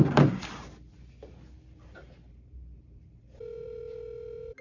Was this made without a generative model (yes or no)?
no